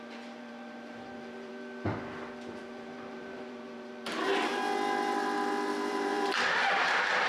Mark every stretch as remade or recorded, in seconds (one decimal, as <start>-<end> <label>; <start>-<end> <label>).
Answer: 0.0-1.5 remade; 1.5-2.6 recorded; 2.6-4.5 remade; 4.5-5.9 recorded; 5.9-7.3 remade